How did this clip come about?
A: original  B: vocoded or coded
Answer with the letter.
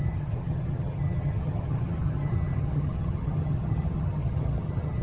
B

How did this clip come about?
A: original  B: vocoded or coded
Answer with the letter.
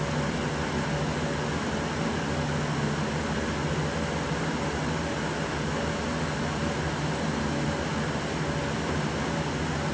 A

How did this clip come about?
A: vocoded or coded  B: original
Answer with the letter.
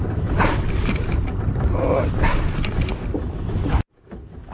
B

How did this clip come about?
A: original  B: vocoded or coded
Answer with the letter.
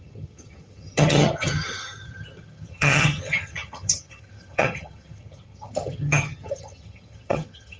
B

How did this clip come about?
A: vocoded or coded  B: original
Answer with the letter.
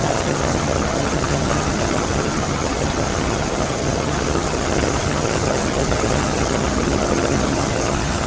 A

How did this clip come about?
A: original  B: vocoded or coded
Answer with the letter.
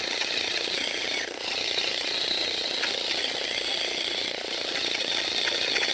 B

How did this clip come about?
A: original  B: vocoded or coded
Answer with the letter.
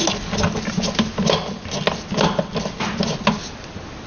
A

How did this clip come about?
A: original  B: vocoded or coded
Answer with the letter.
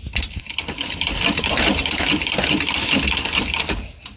A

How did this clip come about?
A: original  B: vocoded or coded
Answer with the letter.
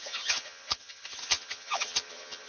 B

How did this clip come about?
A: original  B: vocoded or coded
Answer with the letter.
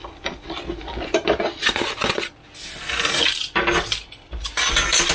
A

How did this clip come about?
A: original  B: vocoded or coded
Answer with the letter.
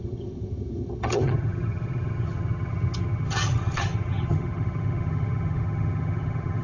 B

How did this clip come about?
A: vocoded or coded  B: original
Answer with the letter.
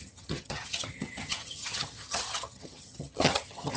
A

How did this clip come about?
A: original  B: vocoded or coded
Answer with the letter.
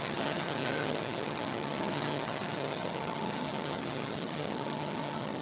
B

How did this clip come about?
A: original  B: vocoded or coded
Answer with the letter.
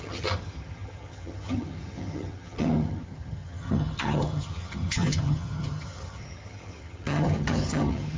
B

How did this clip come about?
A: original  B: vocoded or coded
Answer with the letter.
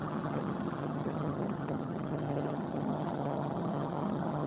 B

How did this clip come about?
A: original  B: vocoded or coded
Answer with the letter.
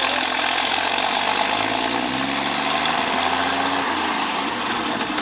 A